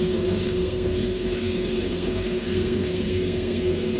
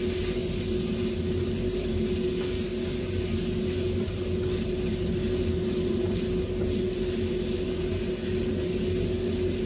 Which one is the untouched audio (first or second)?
second